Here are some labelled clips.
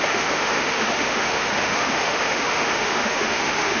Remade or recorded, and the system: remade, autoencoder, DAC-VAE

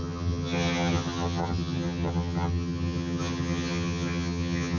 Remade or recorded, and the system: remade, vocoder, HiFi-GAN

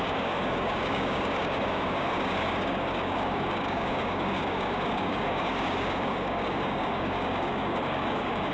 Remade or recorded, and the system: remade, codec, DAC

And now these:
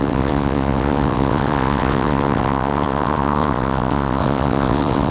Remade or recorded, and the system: remade, vocoder, WaveNeXt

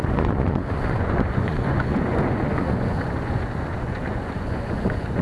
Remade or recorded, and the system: remade, vocoder, Vocos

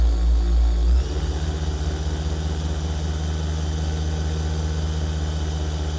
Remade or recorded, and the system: recorded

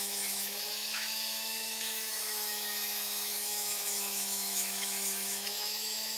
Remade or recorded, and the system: remade, autoencoder, DAC-VAE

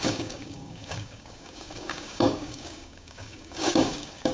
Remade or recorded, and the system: remade, codec, DAC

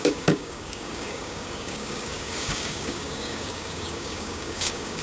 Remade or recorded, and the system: remade, codec, DAC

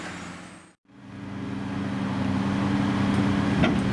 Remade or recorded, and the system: recorded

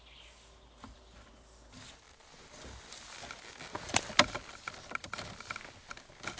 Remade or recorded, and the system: recorded